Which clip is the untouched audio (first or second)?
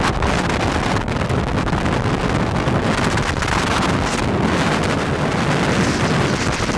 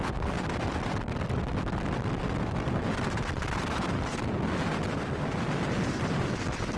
first